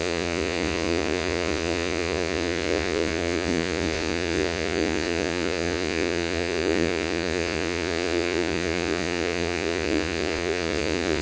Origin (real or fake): fake